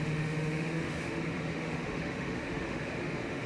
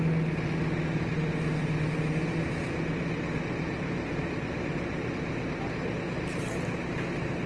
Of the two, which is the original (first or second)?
second